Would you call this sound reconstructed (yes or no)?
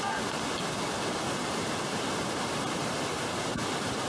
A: no